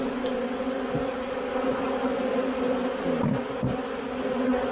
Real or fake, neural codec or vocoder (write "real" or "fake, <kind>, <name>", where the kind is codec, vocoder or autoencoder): real